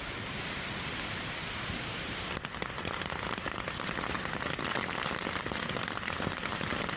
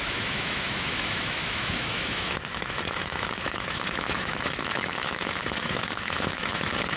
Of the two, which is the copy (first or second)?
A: second